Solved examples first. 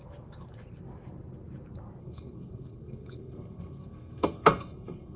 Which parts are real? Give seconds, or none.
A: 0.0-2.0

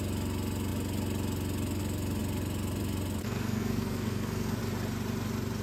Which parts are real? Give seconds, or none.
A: 0.0-3.2; 4.6-5.6

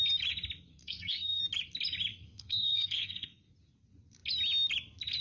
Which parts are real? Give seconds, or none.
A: 0.0-0.7; 1.4-2.1; 3.5-5.2

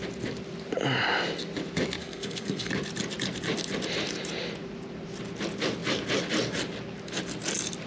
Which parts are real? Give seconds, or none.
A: 0.0-2.0; 2.7-7.9

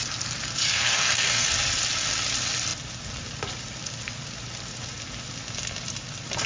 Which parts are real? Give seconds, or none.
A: 0.0-0.7; 1.5-6.5

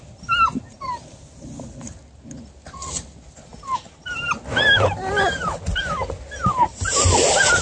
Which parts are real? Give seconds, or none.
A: 0.0-7.6